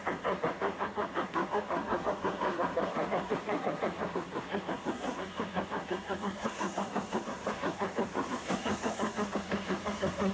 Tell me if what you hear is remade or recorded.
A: remade